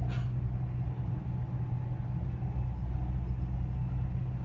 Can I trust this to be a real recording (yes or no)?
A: yes